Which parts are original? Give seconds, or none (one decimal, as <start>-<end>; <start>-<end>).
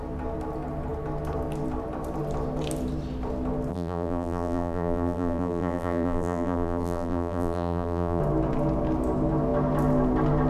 0.0-3.7; 8.2-10.5